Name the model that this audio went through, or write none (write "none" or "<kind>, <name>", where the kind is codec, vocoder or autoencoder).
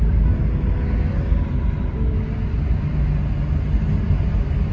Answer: none